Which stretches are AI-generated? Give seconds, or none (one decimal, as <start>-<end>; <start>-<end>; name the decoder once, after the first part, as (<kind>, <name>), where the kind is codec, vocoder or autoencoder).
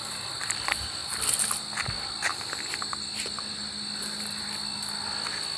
none